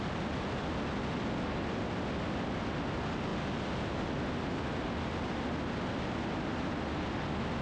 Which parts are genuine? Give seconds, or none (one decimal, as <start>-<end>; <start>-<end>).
0.0-7.6